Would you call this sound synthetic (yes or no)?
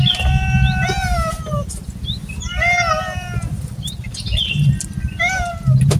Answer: no